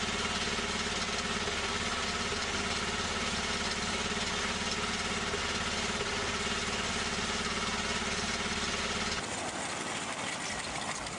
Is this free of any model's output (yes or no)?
yes